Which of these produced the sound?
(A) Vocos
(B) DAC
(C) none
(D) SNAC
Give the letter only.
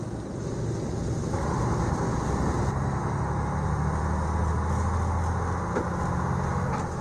C